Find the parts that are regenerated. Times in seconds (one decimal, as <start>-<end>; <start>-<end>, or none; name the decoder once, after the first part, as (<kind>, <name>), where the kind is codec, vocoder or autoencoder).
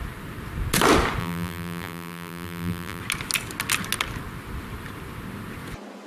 1.2-3.0 (vocoder, BigVGAN v2)